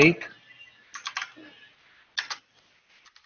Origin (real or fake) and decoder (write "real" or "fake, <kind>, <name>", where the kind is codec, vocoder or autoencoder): real